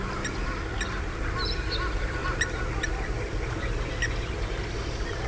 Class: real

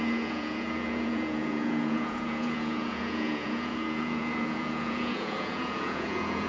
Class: fake